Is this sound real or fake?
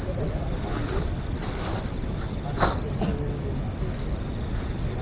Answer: real